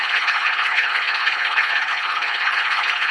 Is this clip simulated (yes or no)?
yes